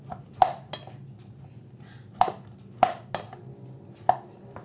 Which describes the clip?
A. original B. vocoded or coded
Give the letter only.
A